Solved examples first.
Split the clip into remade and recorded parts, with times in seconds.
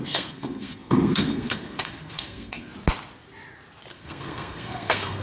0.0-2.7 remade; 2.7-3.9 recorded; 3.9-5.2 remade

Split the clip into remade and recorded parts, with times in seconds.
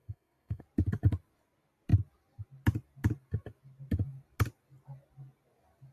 0.0-0.6 remade; 0.6-5.9 recorded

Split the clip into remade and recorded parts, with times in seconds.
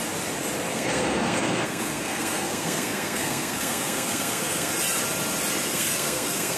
0.0-0.7 recorded; 0.7-4.7 remade; 4.7-5.7 recorded; 5.7-6.6 remade